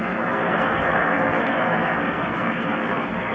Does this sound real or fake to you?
fake